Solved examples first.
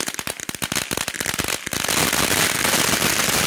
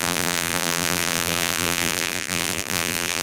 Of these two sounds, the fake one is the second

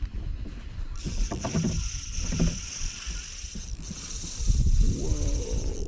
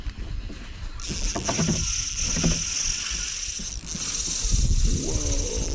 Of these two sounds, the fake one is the first